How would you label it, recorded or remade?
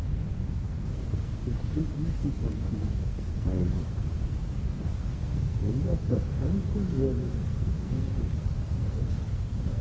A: remade